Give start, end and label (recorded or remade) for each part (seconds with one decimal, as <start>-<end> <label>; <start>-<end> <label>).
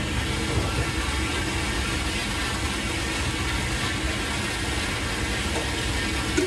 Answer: 0.0-6.5 recorded